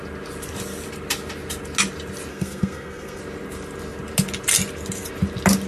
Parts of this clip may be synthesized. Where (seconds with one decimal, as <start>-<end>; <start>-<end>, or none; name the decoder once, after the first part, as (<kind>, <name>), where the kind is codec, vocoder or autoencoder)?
2.3-3.2 (codec, SNAC)